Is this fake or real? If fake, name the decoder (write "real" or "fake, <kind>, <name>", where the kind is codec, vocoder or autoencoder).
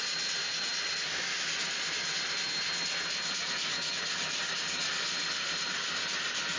real